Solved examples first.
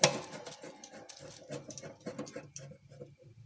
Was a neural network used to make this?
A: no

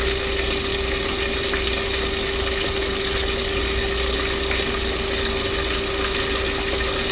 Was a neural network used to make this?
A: no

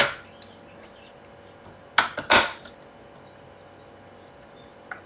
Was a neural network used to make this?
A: no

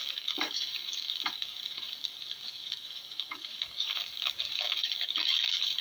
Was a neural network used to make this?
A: yes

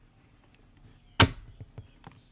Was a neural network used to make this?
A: no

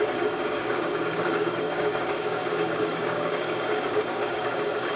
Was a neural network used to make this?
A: yes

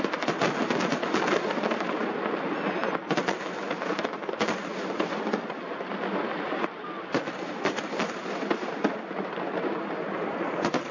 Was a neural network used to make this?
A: no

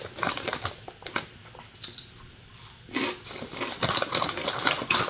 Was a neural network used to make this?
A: no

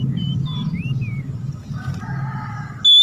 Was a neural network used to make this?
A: no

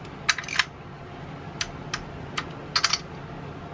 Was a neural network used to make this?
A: no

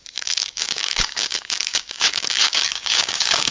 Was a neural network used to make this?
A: yes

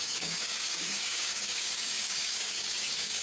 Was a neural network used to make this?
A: yes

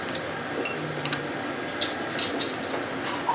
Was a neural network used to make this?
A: no